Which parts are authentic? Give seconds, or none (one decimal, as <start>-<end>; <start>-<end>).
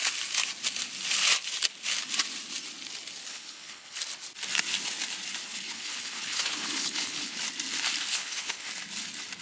0.0-3.3; 4.0-5.4; 7.4-8.1; 8.7-9.4